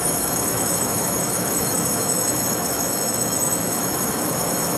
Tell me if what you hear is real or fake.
fake